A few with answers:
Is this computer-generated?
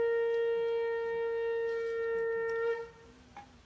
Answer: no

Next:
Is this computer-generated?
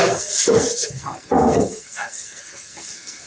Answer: yes